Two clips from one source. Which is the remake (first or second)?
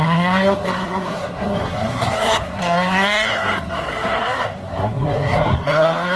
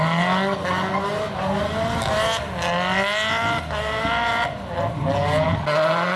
first